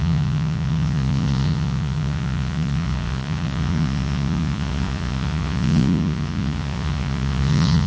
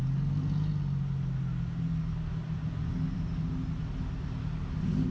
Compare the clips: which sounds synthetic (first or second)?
first